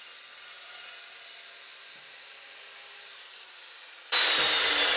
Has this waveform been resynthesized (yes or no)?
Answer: no